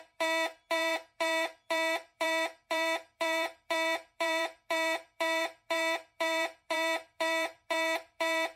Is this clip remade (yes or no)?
yes